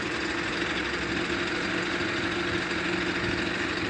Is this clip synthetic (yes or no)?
no